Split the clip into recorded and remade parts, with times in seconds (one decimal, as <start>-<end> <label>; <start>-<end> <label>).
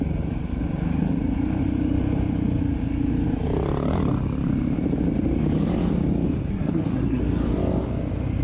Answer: 0.0-6.5 recorded; 6.5-7.2 remade; 7.2-8.4 recorded